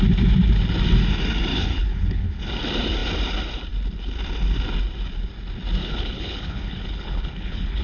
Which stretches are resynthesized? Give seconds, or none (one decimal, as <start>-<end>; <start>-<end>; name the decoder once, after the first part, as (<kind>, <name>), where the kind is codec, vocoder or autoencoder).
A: 1.5-2.4 (codec, HILCodec); 5.8-7.8